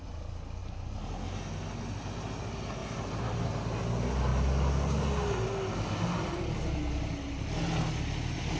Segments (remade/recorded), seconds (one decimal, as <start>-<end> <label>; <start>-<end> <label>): 0.0-2.8 recorded; 2.8-3.8 remade; 3.8-8.6 recorded